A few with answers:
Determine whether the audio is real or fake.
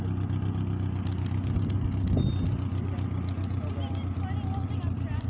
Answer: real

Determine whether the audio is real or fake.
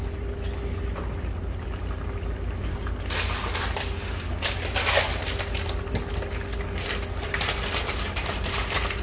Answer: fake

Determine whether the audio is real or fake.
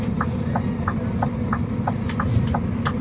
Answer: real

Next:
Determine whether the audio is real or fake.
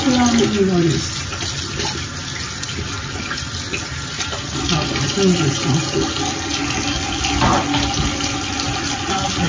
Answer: real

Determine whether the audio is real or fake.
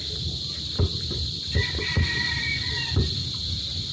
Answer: real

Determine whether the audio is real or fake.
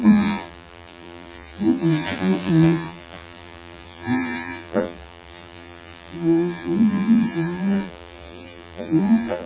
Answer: fake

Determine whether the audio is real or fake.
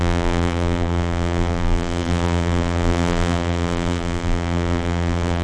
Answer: fake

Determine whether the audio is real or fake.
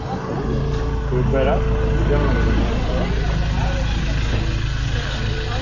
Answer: real